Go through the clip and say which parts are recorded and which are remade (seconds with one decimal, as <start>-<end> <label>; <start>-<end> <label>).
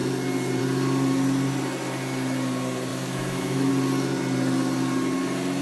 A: 0.0-2.9 recorded; 2.9-3.7 remade; 3.7-5.6 recorded